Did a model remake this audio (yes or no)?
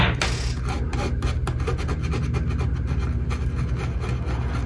no